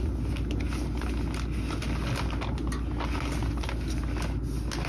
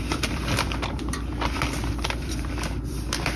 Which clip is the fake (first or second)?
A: second